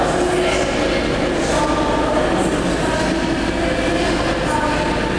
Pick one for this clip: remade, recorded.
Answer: recorded